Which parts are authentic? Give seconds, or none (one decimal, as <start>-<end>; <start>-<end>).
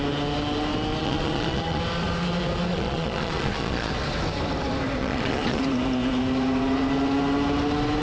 0.0-1.0; 1.8-2.7; 3.9-5.0; 5.6-8.0